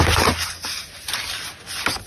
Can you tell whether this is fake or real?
real